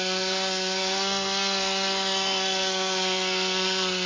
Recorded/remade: remade